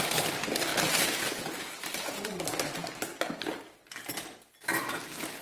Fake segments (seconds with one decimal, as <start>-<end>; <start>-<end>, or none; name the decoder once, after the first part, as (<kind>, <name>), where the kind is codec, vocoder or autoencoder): 0.7-2.3 (vocoder, BigVGAN v2)